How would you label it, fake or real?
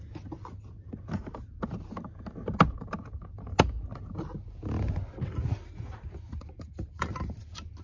real